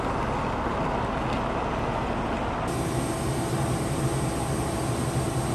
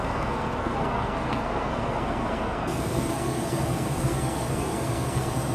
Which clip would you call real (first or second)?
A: first